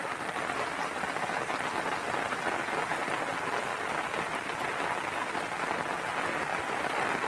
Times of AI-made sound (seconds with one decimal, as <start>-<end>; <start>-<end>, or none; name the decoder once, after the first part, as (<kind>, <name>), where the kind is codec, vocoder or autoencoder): none